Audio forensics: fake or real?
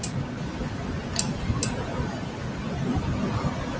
real